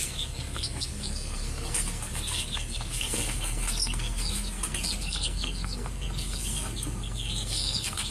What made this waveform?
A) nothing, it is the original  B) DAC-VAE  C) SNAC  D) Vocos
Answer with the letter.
C